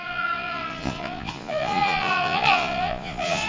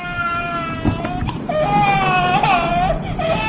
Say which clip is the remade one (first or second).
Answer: first